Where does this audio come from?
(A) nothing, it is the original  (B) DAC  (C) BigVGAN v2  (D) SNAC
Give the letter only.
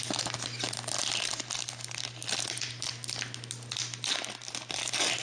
A